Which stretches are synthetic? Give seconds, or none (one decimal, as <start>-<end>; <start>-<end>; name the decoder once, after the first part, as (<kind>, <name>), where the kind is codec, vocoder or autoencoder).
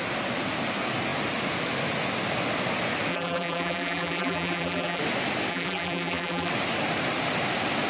3.1-5.0 (vocoder, BigVGAN v2); 5.5-6.5